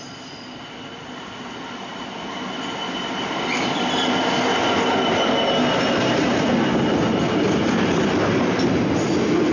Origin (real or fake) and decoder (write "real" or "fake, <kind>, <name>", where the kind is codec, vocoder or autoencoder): real